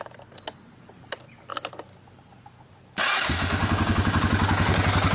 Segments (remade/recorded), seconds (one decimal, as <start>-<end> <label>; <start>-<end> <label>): 0.0-3.6 recorded; 3.6-4.2 remade; 4.2-5.1 recorded